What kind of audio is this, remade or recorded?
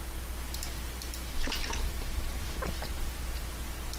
recorded